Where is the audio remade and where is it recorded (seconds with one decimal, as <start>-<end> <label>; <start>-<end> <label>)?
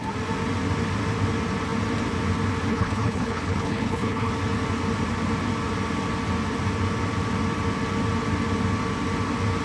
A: 0.0-2.7 recorded; 2.7-4.3 remade; 4.3-9.6 recorded